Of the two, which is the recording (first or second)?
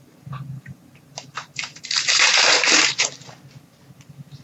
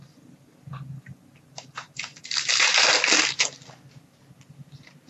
second